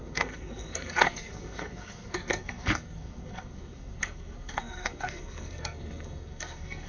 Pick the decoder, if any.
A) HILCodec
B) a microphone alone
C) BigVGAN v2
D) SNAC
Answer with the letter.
D